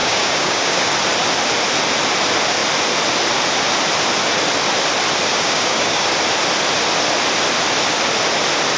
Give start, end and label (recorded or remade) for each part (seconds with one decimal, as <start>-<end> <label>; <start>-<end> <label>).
0.0-0.9 remade; 0.9-5.3 recorded; 5.3-6.1 remade; 6.1-8.8 recorded